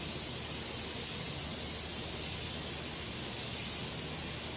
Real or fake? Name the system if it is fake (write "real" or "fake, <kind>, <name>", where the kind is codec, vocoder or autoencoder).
real